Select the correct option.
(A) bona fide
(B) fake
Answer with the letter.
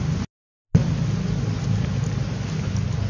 A